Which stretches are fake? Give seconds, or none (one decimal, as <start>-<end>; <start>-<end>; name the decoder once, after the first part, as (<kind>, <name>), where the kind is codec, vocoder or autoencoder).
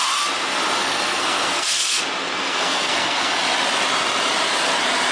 0.8-2.0 (codec, SNAC); 2.4-3.3